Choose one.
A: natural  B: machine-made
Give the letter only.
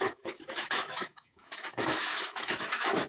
B